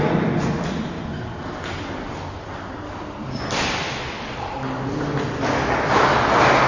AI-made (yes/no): no